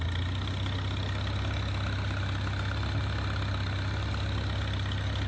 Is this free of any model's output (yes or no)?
yes